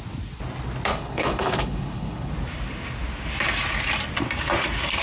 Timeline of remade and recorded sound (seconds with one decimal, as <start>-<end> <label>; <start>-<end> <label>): 0.0-0.9 recorded; 0.9-2.3 remade; 2.3-5.0 recorded